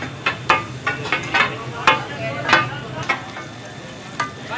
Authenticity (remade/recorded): recorded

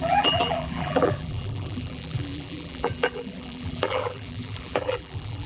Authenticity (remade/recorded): remade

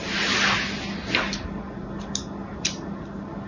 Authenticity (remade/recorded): recorded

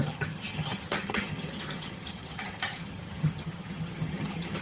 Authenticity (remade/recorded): remade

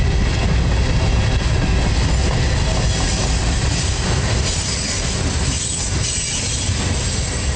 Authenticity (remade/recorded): recorded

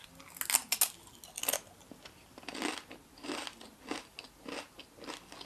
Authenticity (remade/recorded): recorded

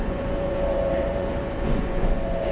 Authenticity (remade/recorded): remade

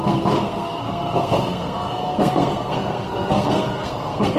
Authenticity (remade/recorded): remade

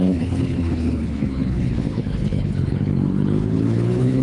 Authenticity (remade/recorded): remade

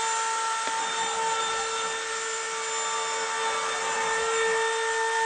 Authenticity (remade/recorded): recorded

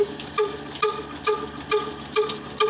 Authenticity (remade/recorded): recorded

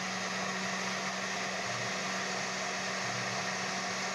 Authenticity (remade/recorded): recorded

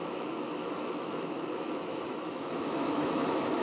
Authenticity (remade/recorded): remade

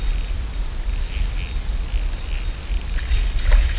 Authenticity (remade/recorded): recorded